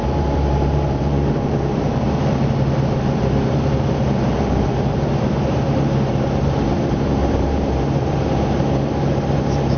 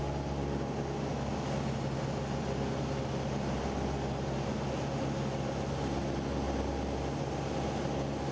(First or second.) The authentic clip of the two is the second